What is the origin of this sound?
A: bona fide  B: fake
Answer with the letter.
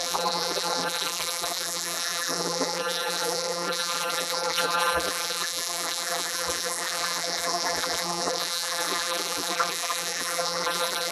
B